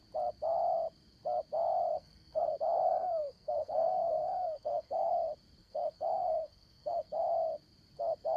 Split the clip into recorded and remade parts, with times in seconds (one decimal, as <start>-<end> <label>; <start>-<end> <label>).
0.0-1.9 recorded; 1.9-2.5 remade; 2.5-3.0 recorded; 3.0-5.1 remade; 5.1-5.6 recorded; 5.6-7.2 remade; 7.2-8.4 recorded